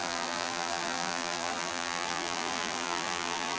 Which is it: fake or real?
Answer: fake